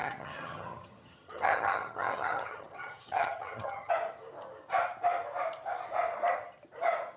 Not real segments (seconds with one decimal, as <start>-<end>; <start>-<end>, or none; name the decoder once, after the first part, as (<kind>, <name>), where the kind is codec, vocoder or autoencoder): 0.0-3.9 (vocoder, HiFi-GAN)